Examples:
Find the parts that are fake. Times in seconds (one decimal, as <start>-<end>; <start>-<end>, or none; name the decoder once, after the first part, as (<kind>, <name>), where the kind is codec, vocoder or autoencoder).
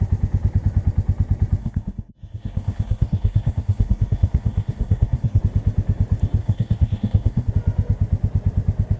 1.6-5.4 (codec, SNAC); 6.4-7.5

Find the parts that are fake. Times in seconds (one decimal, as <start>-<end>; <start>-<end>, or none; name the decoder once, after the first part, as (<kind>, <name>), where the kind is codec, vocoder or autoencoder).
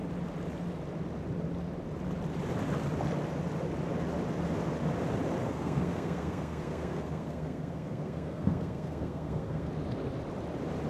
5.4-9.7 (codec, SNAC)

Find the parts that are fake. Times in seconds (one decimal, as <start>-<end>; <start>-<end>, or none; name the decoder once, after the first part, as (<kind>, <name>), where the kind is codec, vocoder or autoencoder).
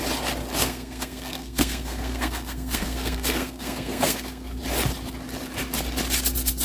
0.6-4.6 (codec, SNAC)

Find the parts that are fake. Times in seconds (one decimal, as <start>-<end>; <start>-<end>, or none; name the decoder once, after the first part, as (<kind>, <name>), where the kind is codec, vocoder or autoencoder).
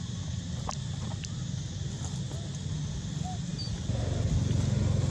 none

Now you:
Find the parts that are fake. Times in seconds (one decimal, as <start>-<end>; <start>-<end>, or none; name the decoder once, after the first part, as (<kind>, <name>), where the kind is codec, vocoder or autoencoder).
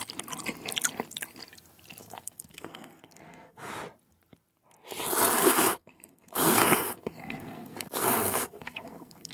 2.0-3.7 (codec, SNAC); 5.4-9.3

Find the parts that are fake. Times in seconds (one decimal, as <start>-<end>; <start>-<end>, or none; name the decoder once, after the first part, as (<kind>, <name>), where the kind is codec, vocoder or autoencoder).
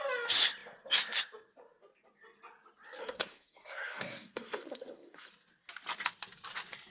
3.0-5.3 (codec, SNAC)